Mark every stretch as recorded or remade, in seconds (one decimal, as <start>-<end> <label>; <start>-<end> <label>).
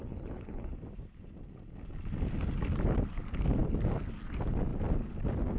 0.0-0.7 remade; 0.7-5.6 recorded